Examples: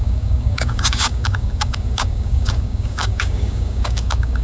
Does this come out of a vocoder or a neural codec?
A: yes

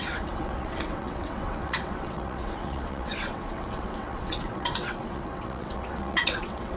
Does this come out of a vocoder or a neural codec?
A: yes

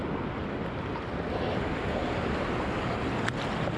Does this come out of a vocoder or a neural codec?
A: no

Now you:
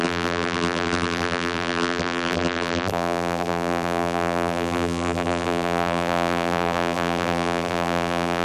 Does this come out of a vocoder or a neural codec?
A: yes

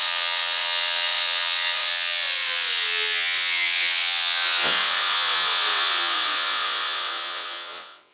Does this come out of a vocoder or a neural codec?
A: yes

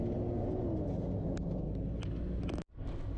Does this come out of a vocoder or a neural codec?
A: no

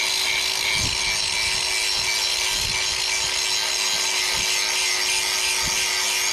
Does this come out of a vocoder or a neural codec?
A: no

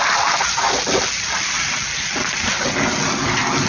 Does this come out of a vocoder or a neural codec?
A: no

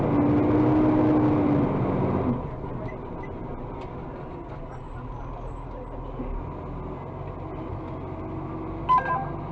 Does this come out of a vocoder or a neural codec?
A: no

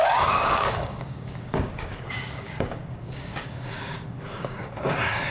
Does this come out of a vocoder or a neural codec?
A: yes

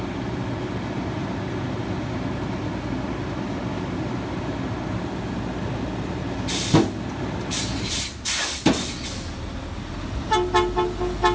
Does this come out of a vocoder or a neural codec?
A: no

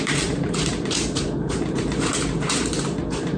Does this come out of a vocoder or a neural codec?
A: yes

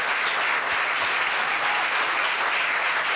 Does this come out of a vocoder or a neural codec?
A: no